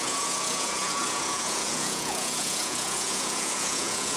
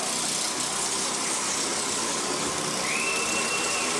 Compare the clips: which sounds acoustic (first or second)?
second